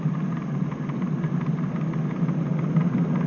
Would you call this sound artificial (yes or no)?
no